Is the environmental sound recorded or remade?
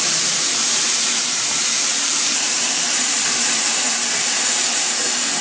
remade